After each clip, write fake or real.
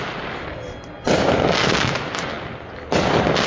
real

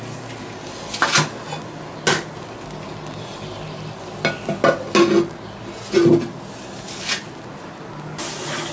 real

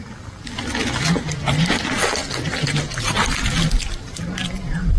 real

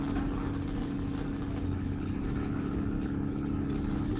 fake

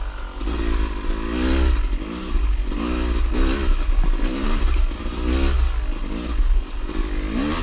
real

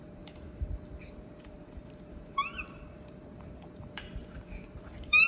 fake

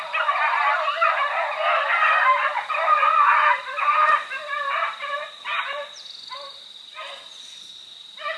real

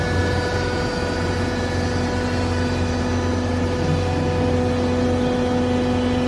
real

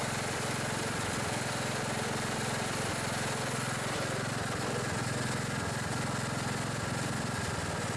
real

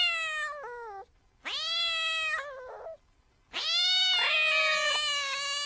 real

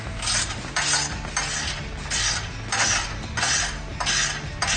real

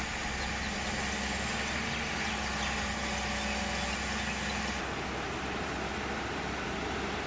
real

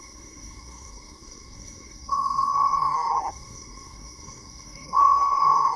fake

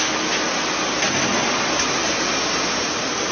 real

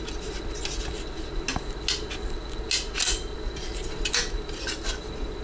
real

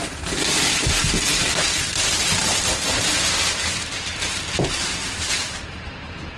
fake